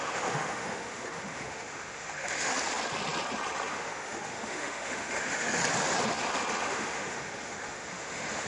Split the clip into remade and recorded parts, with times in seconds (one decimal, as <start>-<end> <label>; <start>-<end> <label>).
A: 0.0-2.5 remade; 2.5-3.7 recorded; 3.7-5.6 remade; 5.6-6.7 recorded; 6.7-8.5 remade